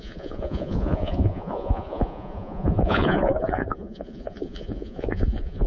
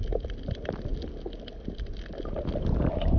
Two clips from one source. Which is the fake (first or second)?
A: first